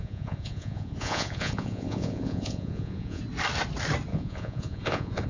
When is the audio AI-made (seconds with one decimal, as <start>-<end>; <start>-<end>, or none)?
0.0-3.2; 4.1-5.3